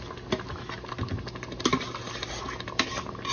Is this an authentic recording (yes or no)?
yes